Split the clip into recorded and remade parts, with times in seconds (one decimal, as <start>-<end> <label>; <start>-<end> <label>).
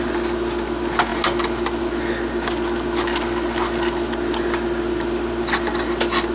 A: 0.0-6.3 recorded